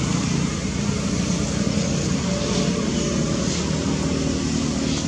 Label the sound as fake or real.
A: real